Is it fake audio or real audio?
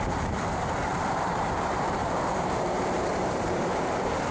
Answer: fake